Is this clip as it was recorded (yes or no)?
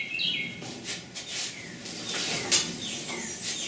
yes